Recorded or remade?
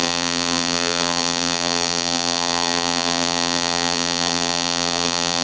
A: remade